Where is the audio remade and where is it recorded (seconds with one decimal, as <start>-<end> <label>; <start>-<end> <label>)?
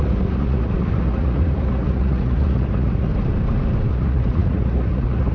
0.0-3.1 remade; 3.1-3.9 recorded; 3.9-5.3 remade